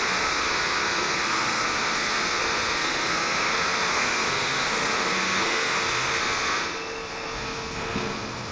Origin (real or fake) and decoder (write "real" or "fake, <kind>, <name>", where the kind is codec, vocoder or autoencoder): fake, codec, SNAC